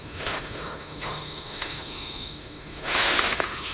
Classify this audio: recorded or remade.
remade